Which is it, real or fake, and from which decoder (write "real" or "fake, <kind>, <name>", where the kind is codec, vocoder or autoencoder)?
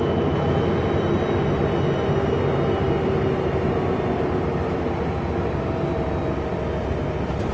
real